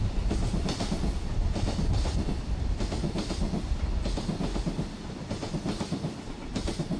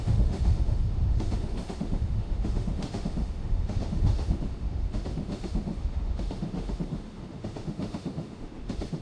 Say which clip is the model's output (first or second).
second